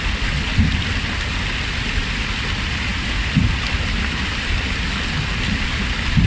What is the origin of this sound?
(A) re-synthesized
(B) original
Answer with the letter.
B